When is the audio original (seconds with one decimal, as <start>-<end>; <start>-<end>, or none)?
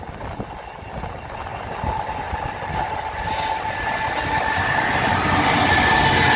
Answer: 0.0-6.4